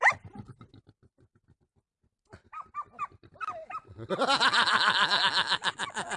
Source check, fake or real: real